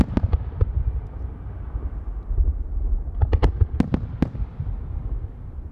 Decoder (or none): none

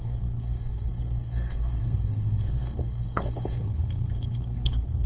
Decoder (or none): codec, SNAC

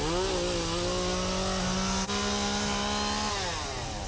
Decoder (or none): none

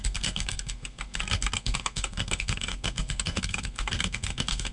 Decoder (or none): codec, SNAC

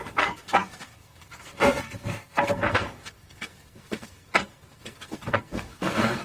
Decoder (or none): codec, SNAC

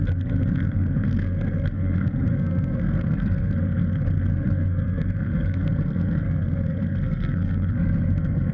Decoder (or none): codec, SNAC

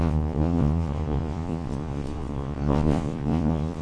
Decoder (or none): vocoder, Vocos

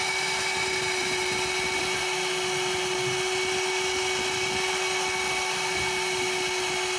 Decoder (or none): none